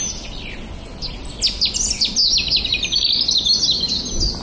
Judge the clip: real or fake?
real